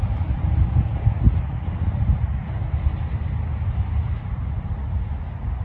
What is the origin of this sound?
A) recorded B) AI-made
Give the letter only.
A